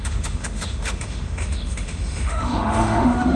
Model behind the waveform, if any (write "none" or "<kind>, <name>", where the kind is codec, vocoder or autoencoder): autoencoder, DAC-VAE